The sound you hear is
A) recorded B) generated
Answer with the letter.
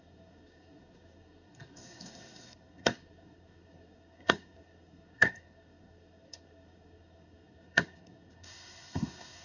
B